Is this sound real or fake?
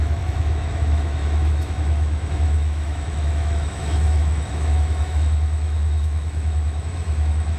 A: fake